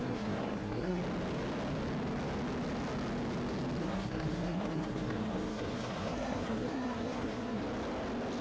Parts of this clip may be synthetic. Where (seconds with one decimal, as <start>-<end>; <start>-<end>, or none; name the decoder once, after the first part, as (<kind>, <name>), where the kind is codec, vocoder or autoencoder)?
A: 0.0-1.0 (codec, SNAC); 3.8-7.6